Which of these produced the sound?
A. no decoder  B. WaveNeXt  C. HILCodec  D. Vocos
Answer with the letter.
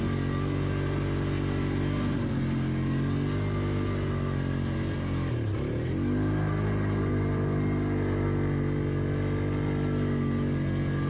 A